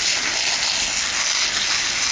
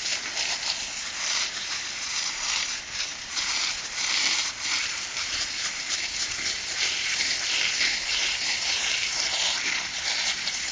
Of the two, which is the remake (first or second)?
second